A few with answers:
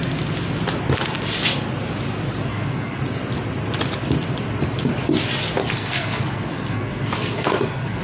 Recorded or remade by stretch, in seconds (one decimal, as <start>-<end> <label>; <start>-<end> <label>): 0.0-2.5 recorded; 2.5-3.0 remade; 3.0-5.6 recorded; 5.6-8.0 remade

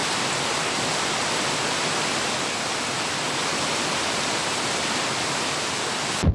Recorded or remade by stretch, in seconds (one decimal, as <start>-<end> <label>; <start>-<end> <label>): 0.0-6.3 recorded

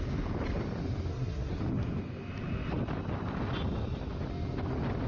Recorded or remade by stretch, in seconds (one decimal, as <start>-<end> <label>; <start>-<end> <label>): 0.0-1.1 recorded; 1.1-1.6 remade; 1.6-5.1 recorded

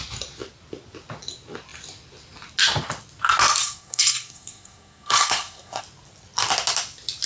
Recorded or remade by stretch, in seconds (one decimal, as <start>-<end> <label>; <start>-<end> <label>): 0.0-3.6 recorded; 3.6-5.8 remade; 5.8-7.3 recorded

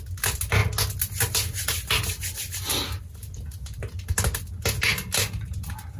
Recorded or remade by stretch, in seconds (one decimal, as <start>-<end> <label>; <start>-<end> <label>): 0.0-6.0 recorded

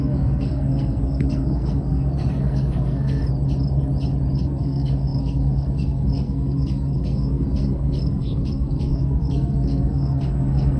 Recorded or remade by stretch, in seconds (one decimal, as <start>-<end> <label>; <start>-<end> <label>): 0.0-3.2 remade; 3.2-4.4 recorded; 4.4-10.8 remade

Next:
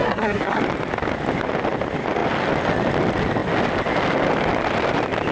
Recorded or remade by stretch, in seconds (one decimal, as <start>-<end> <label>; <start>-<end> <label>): 0.0-0.6 remade; 0.6-5.3 recorded